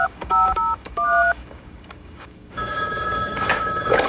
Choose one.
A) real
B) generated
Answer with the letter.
B